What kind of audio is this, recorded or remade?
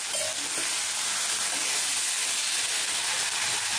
recorded